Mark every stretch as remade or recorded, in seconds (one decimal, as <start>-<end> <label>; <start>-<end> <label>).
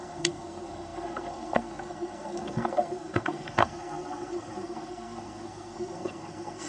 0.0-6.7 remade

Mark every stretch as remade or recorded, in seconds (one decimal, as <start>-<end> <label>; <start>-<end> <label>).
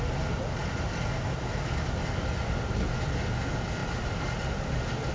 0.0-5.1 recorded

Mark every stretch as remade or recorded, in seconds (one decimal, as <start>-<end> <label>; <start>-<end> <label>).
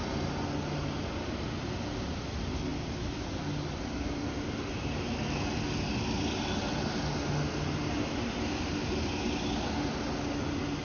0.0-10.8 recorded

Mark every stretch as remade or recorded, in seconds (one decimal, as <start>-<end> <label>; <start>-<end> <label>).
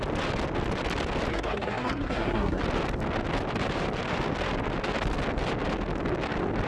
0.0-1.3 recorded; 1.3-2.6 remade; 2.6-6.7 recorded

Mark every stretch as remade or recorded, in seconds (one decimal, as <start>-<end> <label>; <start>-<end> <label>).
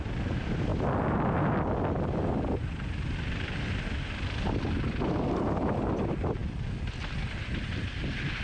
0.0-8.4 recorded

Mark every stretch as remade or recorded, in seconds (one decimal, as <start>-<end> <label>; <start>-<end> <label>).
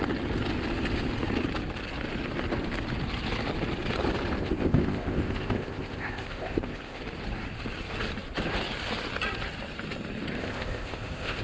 0.0-4.4 recorded; 4.4-7.0 remade; 7.0-10.4 recorded; 10.4-11.4 remade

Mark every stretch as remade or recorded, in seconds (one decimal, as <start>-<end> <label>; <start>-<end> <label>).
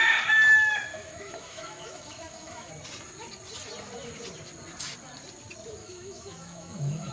0.0-0.9 recorded; 0.9-2.7 remade; 2.7-5.8 recorded; 5.8-7.1 remade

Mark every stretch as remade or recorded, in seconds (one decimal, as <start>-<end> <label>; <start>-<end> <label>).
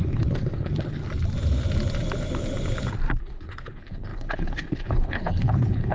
0.0-1.0 remade; 1.0-3.2 recorded; 3.2-5.9 remade